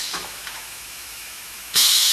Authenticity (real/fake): fake